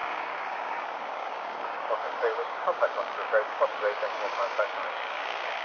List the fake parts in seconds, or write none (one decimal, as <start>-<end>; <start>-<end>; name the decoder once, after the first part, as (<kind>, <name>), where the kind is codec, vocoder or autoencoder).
0.0-5.6 (codec, DAC)